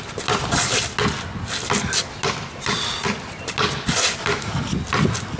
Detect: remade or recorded recorded